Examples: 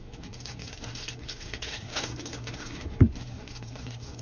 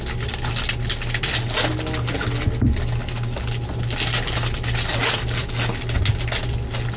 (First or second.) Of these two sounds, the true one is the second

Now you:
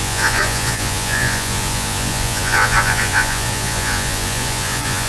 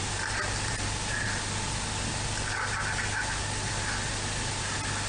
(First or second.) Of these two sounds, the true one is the second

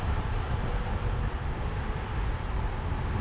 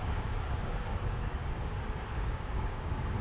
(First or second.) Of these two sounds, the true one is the first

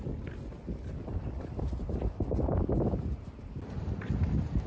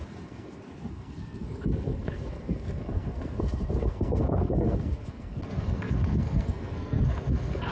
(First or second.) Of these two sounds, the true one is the first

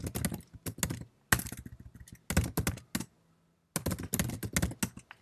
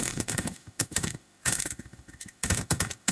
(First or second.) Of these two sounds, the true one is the first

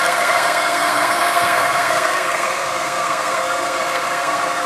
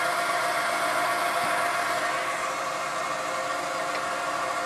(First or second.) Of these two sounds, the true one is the second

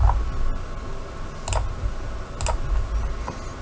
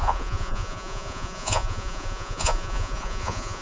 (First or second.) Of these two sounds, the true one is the first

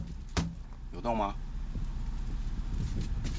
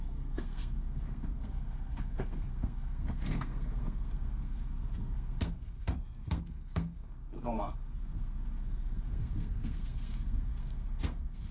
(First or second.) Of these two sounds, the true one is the first